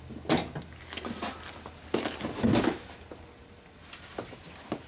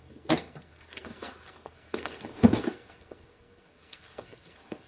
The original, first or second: first